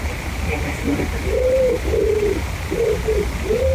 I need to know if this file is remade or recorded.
recorded